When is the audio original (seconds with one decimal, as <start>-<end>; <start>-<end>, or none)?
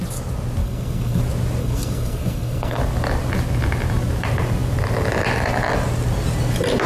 0.0-0.6; 1.2-1.6; 2.8-6.9